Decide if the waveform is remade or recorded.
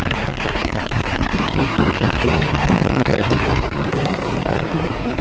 remade